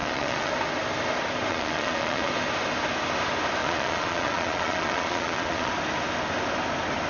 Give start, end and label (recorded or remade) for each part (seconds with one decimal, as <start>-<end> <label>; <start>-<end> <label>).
0.0-0.5 remade; 0.5-1.5 recorded; 1.5-2.3 remade; 2.3-3.6 recorded; 3.6-5.7 remade; 5.7-7.1 recorded